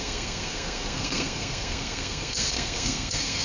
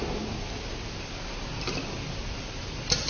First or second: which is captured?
second